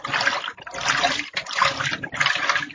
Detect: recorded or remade recorded